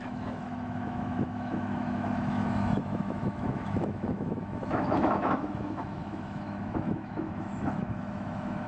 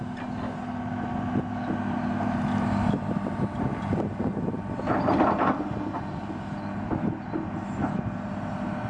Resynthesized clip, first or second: first